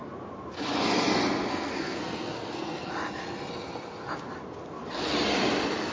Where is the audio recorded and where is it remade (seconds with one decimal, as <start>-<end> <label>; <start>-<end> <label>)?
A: 0.0-1.5 recorded; 1.5-2.9 remade; 2.9-5.9 recorded